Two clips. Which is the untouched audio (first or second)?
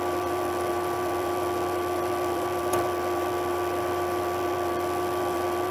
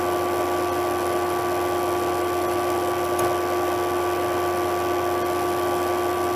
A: second